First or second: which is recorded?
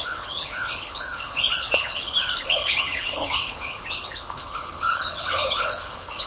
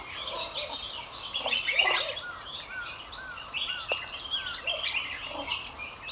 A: second